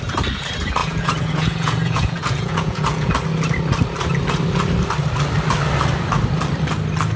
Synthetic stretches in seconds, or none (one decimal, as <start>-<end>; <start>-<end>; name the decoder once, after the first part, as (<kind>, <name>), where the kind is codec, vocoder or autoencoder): 0.8-3.1 (vocoder, Vocos)